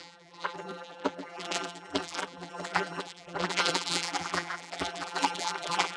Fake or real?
fake